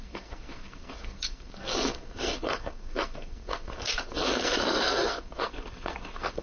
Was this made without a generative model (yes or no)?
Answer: no